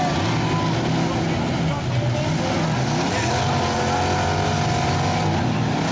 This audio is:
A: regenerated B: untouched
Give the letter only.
B